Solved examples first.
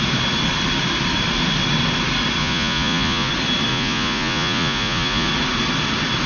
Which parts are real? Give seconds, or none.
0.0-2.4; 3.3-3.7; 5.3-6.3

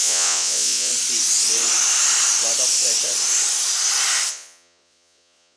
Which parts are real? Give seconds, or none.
0.9-4.3

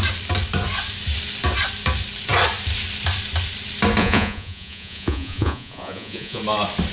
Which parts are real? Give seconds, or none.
0.0-4.0; 6.4-6.9

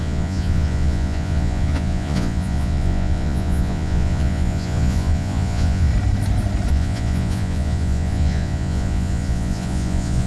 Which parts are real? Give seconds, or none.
5.9-6.7

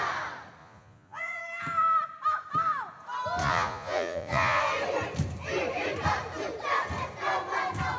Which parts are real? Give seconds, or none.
0.0-0.6; 1.4-3.4; 4.6-8.0